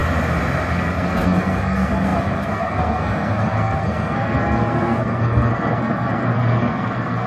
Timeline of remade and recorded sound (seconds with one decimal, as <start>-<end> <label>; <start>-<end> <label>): 0.0-0.7 recorded; 0.7-7.3 remade